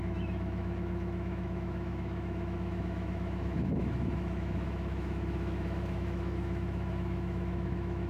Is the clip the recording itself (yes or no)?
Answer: no